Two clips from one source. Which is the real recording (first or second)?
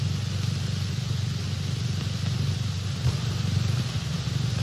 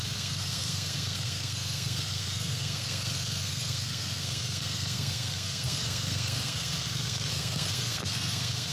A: first